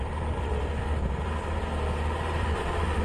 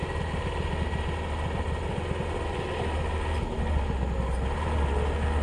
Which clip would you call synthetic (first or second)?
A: first